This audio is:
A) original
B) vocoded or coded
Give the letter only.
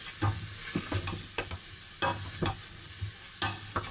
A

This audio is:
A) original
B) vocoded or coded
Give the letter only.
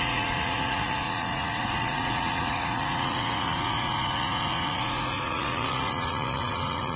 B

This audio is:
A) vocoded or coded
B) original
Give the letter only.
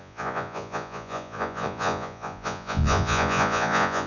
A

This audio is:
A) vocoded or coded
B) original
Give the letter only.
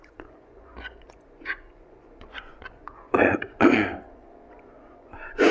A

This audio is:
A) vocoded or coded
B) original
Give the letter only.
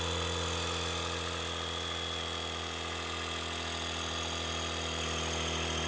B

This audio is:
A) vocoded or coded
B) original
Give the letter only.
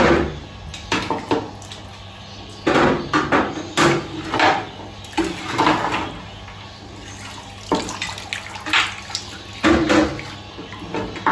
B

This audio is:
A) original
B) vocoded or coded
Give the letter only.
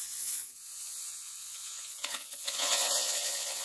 B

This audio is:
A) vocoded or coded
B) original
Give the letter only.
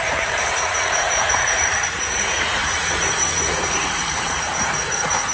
A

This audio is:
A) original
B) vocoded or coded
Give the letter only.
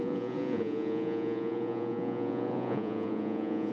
B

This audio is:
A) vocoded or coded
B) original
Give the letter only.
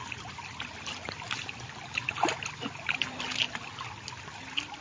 B